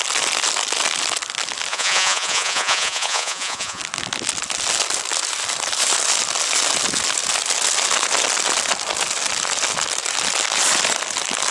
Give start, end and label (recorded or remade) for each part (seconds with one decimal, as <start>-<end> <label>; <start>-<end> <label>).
0.0-1.7 recorded; 1.7-3.8 remade; 3.8-11.5 recorded